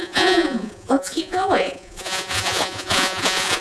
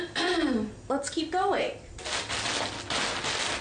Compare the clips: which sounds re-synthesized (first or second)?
first